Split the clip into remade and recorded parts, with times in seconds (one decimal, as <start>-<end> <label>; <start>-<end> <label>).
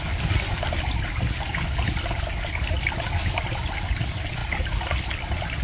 0.0-5.6 recorded